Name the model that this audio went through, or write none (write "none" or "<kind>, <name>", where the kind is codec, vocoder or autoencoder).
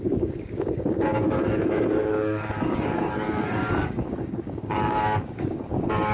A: codec, DAC